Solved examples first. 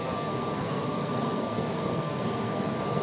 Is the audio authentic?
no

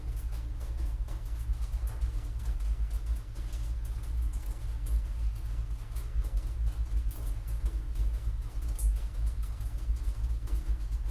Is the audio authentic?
no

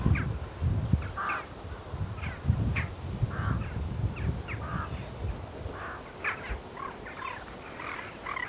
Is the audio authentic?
yes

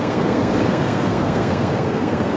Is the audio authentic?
no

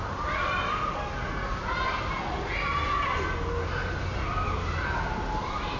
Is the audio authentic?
yes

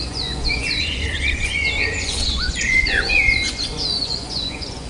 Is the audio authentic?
no